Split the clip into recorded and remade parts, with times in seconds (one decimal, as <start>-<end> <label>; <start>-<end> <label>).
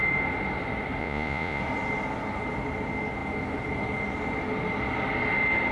0.0-1.0 recorded; 1.0-1.6 remade; 1.6-5.7 recorded